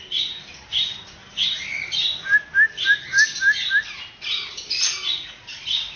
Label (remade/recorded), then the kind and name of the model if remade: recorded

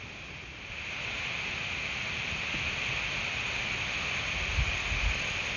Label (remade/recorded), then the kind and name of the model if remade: recorded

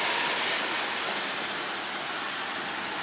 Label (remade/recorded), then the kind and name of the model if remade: recorded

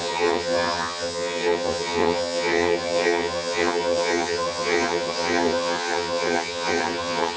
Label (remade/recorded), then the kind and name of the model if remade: remade, vocoder, HiFi-GAN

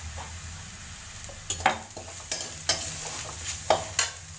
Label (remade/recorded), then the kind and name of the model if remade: recorded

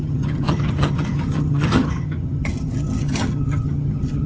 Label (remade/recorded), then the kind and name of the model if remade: remade, vocoder, HiFi-GAN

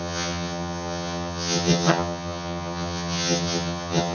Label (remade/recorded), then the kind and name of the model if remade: remade, vocoder, HiFi-GAN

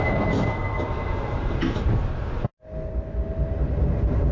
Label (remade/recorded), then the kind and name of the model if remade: recorded